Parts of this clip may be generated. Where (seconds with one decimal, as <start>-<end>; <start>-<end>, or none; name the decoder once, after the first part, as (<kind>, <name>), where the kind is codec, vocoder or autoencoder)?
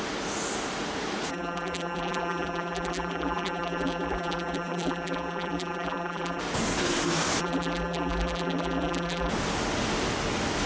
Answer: 1.3-6.4 (vocoder, BigVGAN v2); 7.4-9.3